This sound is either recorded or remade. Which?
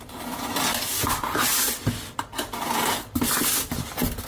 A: recorded